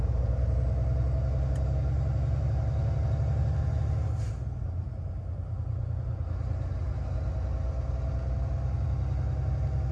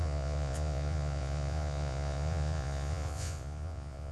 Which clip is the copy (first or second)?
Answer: second